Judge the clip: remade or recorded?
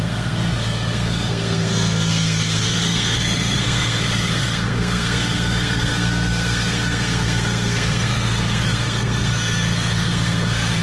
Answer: remade